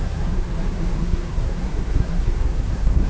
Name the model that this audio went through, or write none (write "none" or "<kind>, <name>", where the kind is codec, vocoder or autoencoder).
codec, SNAC